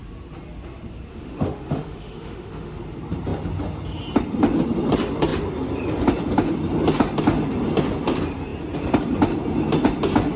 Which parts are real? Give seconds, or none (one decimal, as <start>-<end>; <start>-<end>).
0.0-1.1; 2.8-10.4